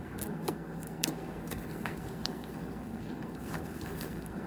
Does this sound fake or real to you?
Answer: fake